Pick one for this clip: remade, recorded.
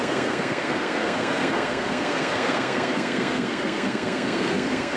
remade